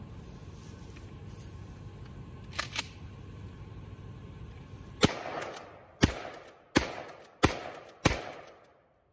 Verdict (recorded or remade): recorded